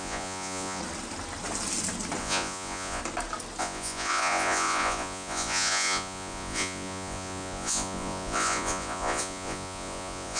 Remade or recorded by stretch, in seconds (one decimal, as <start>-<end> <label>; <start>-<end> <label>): 0.0-0.8 remade; 0.8-2.2 recorded; 2.2-3.0 remade; 3.0-3.6 recorded; 3.6-10.4 remade